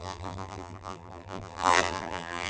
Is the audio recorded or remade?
remade